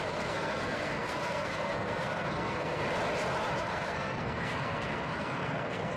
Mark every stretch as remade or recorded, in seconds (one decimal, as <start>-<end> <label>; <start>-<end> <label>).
0.0-2.8 remade; 2.8-3.6 recorded; 3.6-6.0 remade

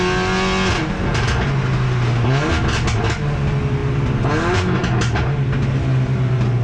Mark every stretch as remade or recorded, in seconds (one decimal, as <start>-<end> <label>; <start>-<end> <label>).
0.0-6.6 recorded

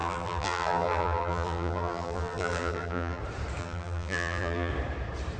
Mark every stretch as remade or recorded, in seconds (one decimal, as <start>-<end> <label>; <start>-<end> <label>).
0.0-3.2 remade; 3.2-3.6 recorded; 3.6-4.7 remade; 4.7-5.4 recorded

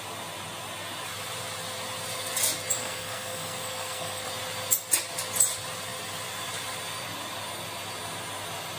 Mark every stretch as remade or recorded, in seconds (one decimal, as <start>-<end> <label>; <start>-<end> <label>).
0.0-2.8 recorded; 2.8-4.3 remade; 4.3-8.8 recorded

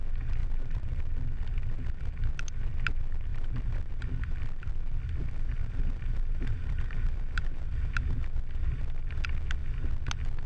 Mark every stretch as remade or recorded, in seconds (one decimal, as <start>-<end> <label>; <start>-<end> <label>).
0.0-0.4 recorded; 0.4-1.0 remade; 1.0-3.3 recorded; 3.3-3.9 remade; 3.9-5.5 recorded; 5.5-7.9 remade; 7.9-10.5 recorded

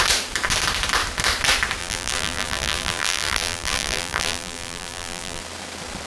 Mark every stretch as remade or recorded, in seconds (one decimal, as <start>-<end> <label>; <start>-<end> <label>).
0.0-1.8 recorded; 1.8-5.4 remade; 5.4-6.1 recorded